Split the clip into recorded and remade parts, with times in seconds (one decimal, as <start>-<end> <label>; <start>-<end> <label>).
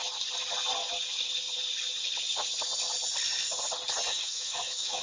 0.0-4.1 recorded; 4.1-5.0 remade